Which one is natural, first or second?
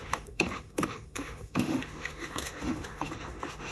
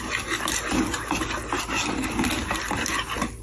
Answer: second